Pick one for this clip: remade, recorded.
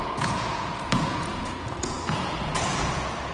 remade